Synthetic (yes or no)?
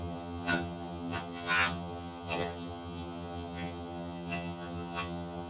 yes